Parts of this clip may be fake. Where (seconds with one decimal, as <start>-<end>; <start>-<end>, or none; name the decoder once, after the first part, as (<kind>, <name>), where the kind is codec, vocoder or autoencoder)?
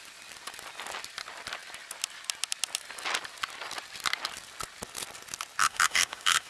5.6-6.5 (autoencoder, DAC-VAE)